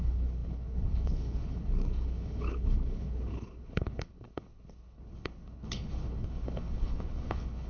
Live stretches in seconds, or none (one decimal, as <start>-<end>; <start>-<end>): none